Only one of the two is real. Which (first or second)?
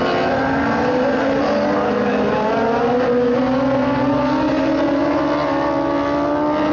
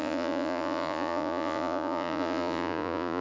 first